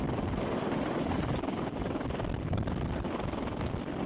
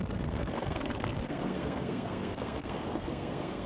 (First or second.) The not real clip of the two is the second